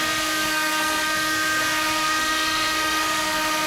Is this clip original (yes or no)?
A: no